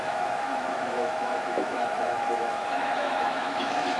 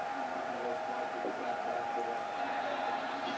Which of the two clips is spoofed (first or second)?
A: first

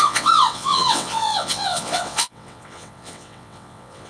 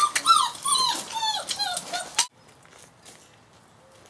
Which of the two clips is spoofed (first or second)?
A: first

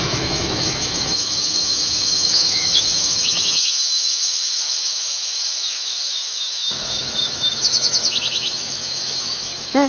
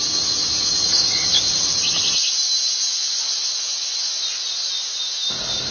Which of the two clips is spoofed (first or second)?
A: first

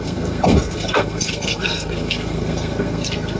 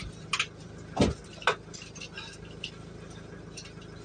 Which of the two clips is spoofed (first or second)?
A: first